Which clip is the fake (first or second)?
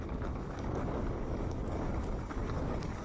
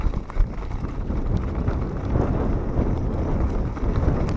first